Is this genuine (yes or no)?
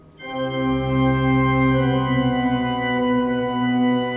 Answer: yes